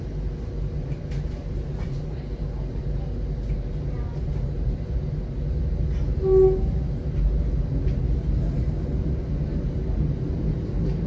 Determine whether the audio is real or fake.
real